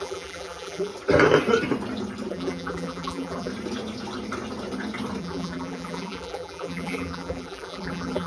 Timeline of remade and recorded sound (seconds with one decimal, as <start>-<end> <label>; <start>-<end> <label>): 0.0-0.9 remade; 0.9-2.3 recorded; 2.3-3.5 remade; 3.5-5.2 recorded; 5.2-8.3 remade